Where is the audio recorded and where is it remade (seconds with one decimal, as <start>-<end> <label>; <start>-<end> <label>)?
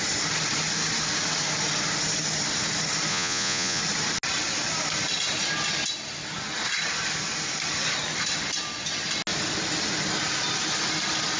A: 0.0-3.1 recorded; 3.1-3.8 remade; 3.8-11.4 recorded